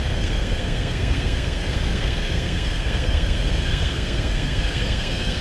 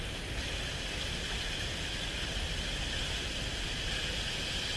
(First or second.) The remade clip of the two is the first